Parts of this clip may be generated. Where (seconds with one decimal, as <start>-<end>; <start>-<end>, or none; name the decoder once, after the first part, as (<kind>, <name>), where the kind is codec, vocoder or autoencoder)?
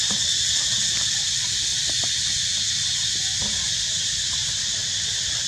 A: none